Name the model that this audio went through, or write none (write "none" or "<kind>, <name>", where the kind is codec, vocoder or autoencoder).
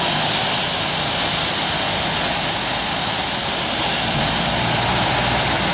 none